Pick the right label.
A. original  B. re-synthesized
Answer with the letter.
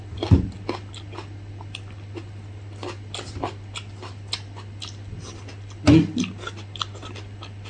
A